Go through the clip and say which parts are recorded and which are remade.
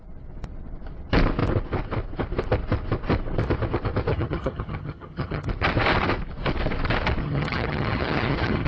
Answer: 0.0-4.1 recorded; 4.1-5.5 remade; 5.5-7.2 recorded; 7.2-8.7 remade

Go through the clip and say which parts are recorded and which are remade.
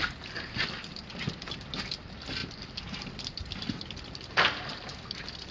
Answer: 0.0-5.5 recorded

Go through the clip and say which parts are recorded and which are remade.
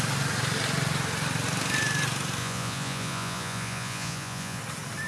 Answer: 0.0-2.4 recorded; 2.4-4.6 remade; 4.6-5.1 recorded